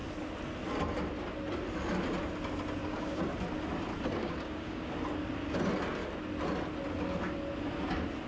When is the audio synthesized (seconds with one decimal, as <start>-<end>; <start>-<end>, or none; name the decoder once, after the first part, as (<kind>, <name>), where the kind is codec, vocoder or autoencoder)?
2.8-3.3 (codec, DAC); 4.2-4.9